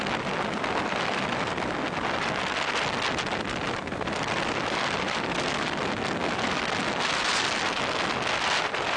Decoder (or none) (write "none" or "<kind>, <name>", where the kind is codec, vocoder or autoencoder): none